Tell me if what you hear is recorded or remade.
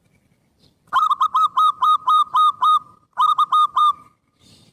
remade